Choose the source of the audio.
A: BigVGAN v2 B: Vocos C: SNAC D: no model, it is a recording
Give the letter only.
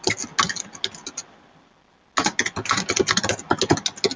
D